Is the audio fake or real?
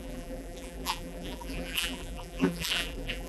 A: fake